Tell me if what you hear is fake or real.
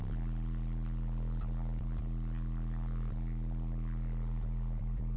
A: real